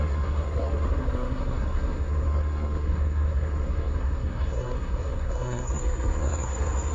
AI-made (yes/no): yes